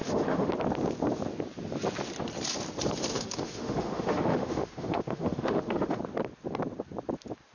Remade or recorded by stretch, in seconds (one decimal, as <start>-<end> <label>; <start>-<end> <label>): 0.0-0.5 remade; 0.5-3.1 recorded; 3.1-6.0 remade; 6.0-7.5 recorded